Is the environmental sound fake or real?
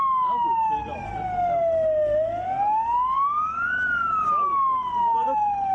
real